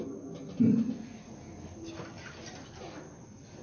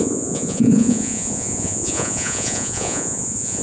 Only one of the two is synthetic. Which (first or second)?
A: second